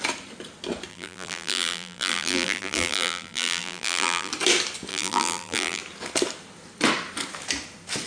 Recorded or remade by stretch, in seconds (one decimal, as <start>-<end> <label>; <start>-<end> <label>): 0.0-0.9 recorded; 0.9-4.3 remade; 4.3-4.9 recorded; 4.9-5.8 remade; 5.8-8.1 recorded